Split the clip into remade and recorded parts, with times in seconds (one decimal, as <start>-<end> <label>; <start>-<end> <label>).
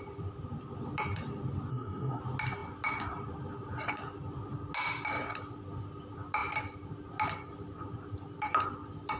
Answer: 0.0-1.7 recorded; 1.7-2.2 remade; 2.2-9.2 recorded